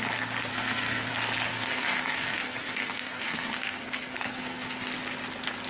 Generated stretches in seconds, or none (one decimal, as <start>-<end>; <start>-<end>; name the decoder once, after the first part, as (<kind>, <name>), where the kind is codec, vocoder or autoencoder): 0.5-1.1 (codec, SNAC); 1.5-4.9